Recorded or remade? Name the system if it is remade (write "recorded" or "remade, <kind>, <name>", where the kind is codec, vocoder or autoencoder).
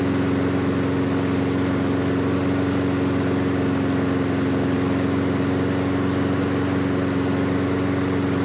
recorded